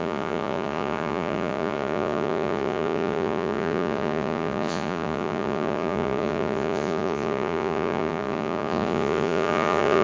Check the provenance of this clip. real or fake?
fake